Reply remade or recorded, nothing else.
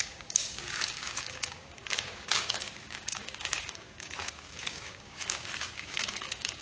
remade